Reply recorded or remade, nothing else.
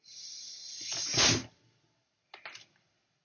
recorded